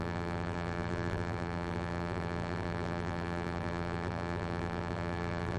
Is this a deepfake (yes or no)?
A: yes